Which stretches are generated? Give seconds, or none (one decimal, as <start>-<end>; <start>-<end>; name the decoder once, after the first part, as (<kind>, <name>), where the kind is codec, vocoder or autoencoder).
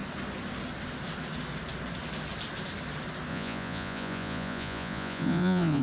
3.3-5.8 (vocoder, Vocos)